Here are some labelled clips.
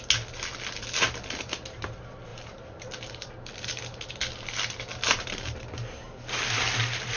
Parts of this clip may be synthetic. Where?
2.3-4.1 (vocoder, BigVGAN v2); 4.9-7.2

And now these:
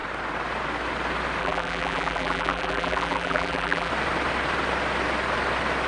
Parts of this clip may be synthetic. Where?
1.4-3.9 (vocoder, BigVGAN v2)

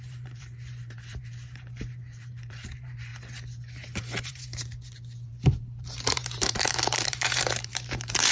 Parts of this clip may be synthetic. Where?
0.0-3.1 (vocoder, BigVGAN v2); 4.2-8.3

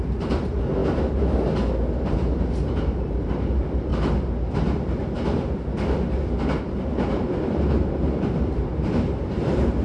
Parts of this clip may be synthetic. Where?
0.0-0.8 (vocoder, BigVGAN v2); 2.0-3.9; 6.6-9.8

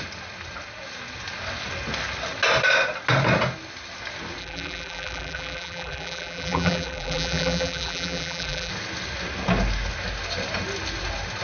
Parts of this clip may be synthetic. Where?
4.4-8.7 (vocoder, BigVGAN v2)